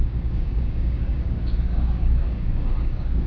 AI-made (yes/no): yes